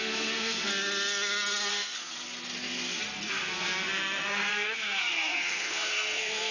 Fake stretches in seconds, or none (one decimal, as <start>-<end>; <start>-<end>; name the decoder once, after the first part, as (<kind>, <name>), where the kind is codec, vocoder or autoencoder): 0.0-0.7 (codec, SNAC); 1.7-2.1; 3.3-6.5